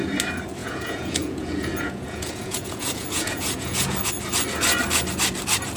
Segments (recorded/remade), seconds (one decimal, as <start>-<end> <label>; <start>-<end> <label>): 0.0-0.6 recorded; 0.6-4.1 remade; 4.1-5.8 recorded